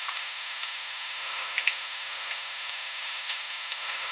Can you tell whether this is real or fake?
fake